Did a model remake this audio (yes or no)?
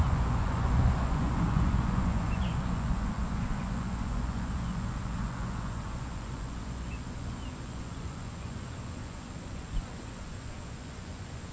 yes